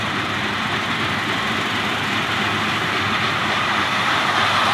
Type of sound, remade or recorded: recorded